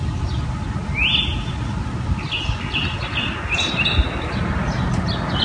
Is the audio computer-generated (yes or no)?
no